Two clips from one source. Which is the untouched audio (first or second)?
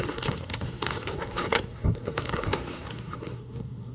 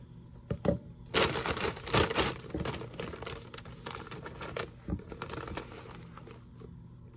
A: second